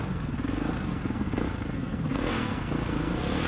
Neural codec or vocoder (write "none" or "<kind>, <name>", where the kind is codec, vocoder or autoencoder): codec, SNAC